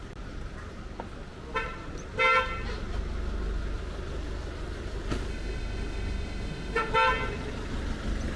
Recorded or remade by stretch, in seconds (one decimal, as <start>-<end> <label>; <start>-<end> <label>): 0.0-5.3 recorded; 5.3-6.9 remade; 6.9-8.4 recorded